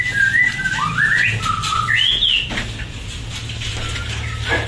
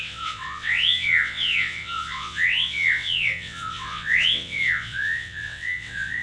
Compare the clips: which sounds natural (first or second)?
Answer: first